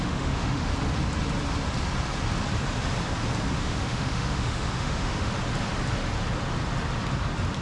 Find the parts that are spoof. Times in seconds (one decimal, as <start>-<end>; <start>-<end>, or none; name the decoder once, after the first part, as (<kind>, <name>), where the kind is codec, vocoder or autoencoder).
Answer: 0.0-0.7 (autoencoder, DAC-VAE); 3.6-5.3